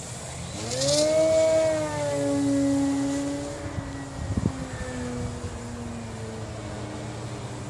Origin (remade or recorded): recorded